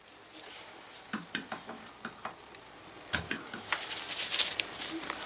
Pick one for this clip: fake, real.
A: fake